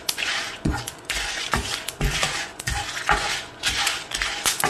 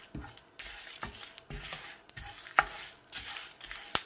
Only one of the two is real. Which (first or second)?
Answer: second